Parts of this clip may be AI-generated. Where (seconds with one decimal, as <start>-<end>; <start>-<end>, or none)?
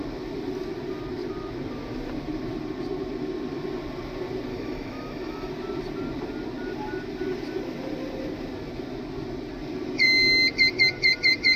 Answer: 4.5-5.5